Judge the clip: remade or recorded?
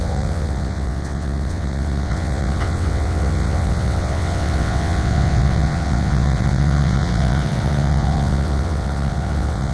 remade